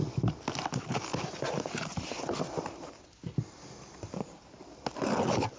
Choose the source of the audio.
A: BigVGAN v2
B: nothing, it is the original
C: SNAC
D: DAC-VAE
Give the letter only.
B